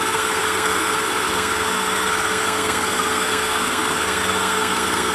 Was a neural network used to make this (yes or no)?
yes